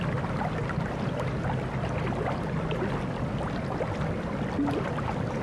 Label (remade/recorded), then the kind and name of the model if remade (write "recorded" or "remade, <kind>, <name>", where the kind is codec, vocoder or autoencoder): recorded